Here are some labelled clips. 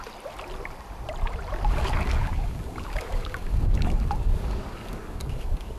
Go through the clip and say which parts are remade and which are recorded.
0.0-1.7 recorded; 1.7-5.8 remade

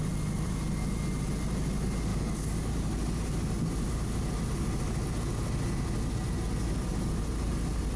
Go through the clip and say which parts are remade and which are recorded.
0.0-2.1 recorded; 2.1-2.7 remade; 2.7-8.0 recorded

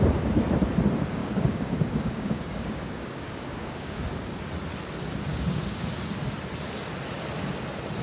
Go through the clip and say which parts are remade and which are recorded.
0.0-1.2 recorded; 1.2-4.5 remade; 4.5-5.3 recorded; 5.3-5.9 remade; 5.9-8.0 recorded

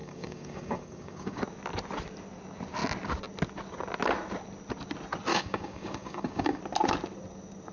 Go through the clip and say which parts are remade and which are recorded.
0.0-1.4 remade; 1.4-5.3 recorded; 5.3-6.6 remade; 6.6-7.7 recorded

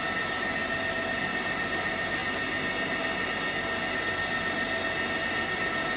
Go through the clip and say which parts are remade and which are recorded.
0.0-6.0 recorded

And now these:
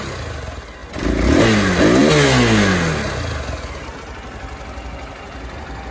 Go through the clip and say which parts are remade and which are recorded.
0.0-5.9 recorded

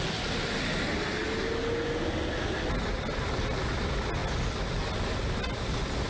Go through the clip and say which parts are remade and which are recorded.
0.0-6.1 recorded

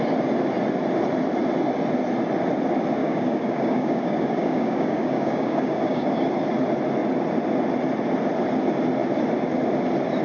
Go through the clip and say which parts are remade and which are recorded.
0.0-3.0 recorded; 3.0-6.1 remade; 6.1-10.2 recorded